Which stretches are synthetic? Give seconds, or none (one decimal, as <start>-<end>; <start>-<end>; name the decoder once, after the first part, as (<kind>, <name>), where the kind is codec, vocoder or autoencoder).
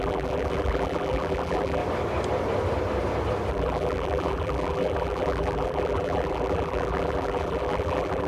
0.0-1.8 (vocoder, BigVGAN v2); 3.5-8.3